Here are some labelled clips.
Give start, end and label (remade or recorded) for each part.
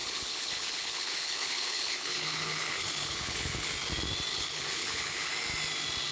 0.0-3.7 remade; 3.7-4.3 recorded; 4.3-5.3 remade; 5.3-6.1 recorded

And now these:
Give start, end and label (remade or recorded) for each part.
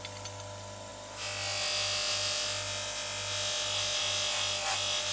0.0-5.1 recorded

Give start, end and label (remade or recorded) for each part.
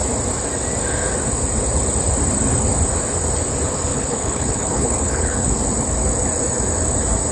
0.0-3.9 recorded; 3.9-5.5 remade; 5.5-7.3 recorded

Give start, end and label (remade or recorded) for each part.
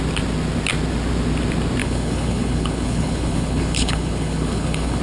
0.0-1.8 recorded; 1.8-5.0 remade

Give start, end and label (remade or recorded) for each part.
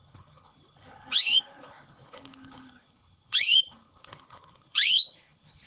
0.0-5.7 remade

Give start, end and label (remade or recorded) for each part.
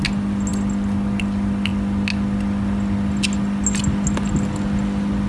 0.0-5.3 recorded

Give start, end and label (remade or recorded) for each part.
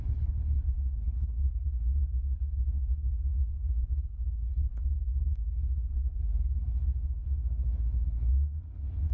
0.0-9.1 remade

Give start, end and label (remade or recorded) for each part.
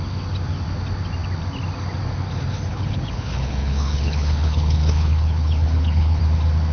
0.0-2.7 recorded; 2.7-6.2 remade; 6.2-6.7 recorded